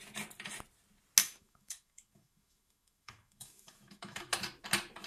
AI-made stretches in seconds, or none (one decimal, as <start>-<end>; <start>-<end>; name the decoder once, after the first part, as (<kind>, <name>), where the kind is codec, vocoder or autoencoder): 1.2-4.3 (autoencoder, DAC-VAE)